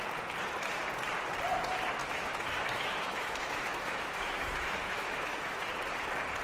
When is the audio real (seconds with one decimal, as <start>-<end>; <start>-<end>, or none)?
0.0-2.0; 5.7-6.4